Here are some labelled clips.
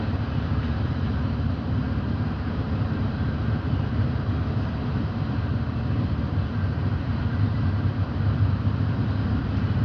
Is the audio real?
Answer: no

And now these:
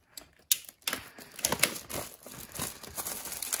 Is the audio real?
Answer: yes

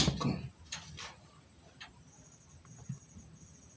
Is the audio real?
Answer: yes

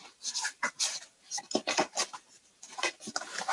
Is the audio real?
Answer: no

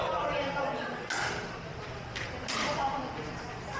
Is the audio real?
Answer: yes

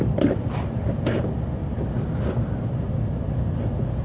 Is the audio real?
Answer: yes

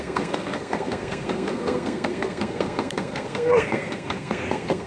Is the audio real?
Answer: no